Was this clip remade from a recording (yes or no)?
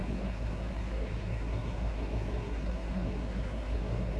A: yes